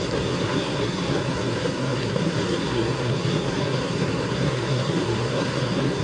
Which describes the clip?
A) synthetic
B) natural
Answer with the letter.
A